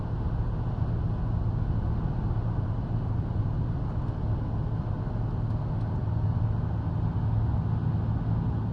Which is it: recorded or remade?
recorded